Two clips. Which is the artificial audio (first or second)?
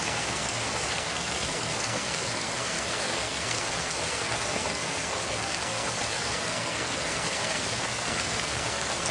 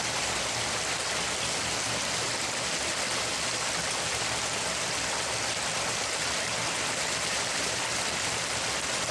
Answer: first